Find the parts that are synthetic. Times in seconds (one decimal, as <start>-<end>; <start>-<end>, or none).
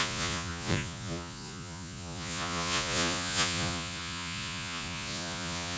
0.0-5.8